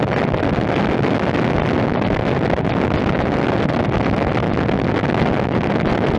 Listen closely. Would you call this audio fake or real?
real